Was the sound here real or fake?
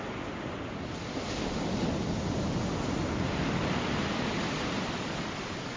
real